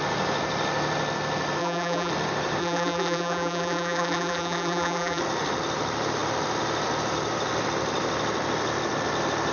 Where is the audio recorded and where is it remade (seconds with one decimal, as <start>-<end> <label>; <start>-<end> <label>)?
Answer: 0.0-1.6 recorded; 1.6-2.1 remade; 2.1-2.6 recorded; 2.6-5.2 remade; 5.2-9.5 recorded

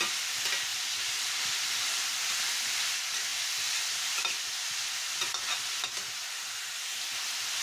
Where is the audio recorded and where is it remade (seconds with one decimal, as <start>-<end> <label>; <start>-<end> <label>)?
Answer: 0.0-0.7 recorded; 0.7-2.8 remade; 2.8-3.3 recorded; 3.3-4.3 remade; 4.3-7.6 recorded